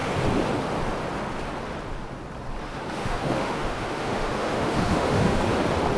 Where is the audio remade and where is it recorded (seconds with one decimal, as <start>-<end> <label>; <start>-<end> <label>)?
0.0-2.6 recorded; 2.6-5.4 remade; 5.4-6.0 recorded